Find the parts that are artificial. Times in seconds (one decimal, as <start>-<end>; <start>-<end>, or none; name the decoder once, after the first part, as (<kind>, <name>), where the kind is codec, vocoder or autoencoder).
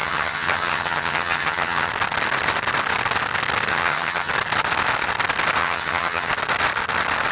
0.0-1.9 (vocoder, HiFi-GAN); 3.7-4.3; 5.6-6.3